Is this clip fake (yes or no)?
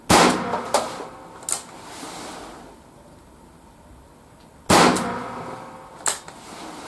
no